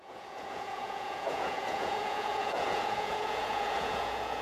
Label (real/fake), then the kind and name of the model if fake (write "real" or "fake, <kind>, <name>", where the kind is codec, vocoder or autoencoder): fake, vocoder, Vocos